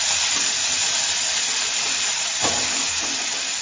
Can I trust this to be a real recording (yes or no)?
no